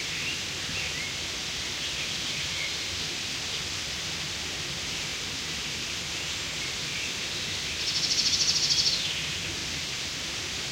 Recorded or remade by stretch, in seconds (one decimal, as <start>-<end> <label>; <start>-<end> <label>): 0.0-1.4 recorded; 1.4-3.8 remade; 3.8-9.6 recorded; 9.6-10.2 remade; 10.2-10.7 recorded